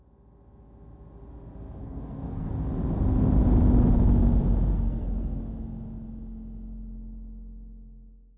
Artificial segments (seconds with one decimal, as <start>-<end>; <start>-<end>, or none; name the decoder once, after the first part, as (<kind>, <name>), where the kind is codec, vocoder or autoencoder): 1.8-2.5 (codec, SNAC); 4.7-5.4

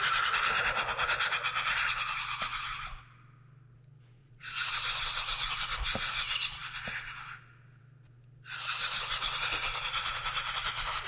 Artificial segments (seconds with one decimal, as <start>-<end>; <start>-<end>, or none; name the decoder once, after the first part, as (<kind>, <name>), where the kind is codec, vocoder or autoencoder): 4.2-4.7 (vocoder, Vocos)

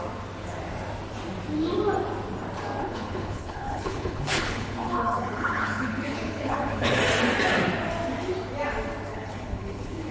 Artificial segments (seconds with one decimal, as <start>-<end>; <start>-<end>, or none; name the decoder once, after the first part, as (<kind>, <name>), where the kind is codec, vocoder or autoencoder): 2.8-7.0 (codec, HILCodec); 9.1-10.1

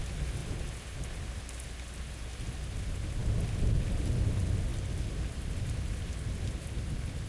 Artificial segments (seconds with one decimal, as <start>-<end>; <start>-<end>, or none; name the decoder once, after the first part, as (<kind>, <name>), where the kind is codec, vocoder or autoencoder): none

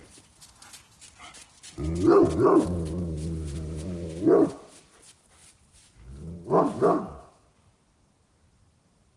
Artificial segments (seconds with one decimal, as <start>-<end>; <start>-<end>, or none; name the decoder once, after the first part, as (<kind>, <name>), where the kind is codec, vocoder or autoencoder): none

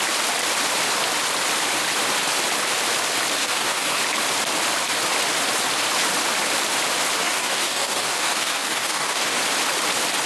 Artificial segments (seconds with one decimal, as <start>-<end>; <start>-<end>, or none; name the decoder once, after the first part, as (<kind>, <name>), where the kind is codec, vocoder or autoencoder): 3.4-4.0 (codec, DAC); 7.2-9.4

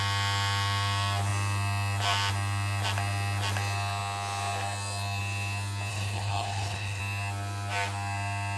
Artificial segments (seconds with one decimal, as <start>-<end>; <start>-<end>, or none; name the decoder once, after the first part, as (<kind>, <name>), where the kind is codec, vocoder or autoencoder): 5.9-7.0 (codec, HILCodec)